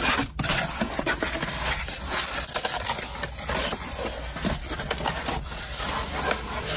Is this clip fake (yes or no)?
no